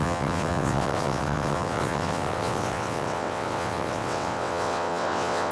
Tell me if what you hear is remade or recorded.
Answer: remade